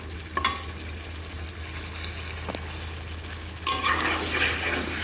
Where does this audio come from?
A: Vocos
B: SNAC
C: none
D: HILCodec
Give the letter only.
C